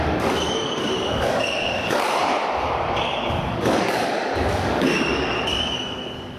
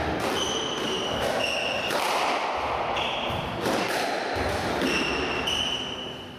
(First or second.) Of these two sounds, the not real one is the first